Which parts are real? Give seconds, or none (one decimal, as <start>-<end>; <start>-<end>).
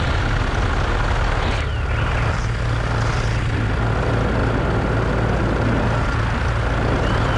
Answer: 0.0-7.4